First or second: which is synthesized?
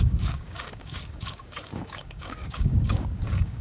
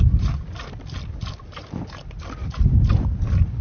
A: first